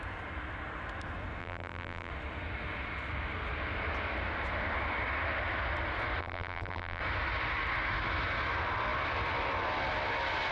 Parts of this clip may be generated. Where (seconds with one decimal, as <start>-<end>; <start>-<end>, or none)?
1.4-2.1; 6.2-7.0